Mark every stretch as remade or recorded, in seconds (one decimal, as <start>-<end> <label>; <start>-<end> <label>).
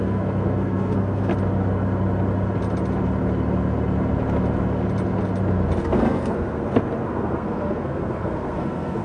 0.0-1.3 remade; 1.3-5.8 recorded; 5.8-9.0 remade